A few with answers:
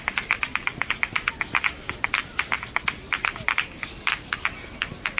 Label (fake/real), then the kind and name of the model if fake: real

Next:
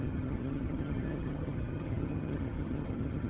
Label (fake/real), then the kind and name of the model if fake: fake, vocoder, HiFi-GAN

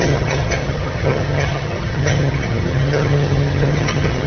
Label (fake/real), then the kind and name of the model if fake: fake, vocoder, HiFi-GAN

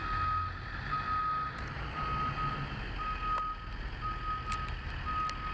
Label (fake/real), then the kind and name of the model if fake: real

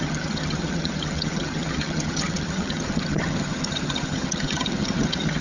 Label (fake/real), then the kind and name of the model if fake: fake, vocoder, HiFi-GAN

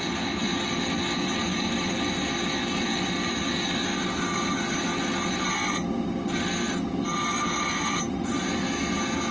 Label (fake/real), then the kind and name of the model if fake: real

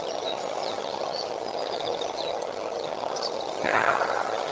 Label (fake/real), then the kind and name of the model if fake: fake, vocoder, HiFi-GAN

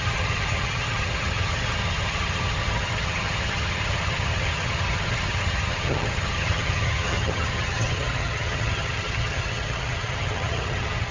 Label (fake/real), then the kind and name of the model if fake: fake, vocoder, HiFi-GAN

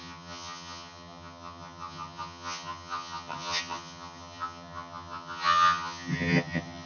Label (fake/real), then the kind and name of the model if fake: fake, vocoder, HiFi-GAN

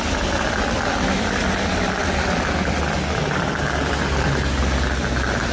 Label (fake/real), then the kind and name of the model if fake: real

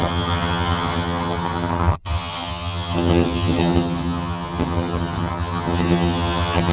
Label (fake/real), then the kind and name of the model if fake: fake, vocoder, HiFi-GAN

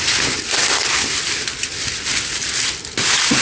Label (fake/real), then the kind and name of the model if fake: real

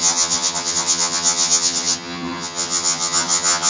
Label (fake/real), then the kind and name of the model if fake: fake, vocoder, HiFi-GAN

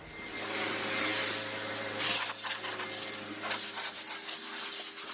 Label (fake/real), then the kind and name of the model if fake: real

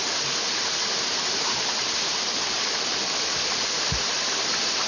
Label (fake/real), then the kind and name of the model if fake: real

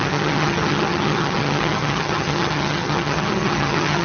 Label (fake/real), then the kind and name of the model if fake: fake, vocoder, HiFi-GAN